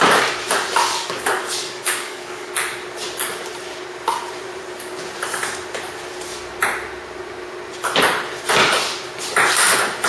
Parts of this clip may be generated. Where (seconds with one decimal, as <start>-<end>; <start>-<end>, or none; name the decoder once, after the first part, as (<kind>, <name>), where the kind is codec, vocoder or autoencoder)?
0.9-2.5 (codec, DAC)